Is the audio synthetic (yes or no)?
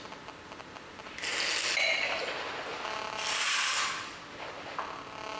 no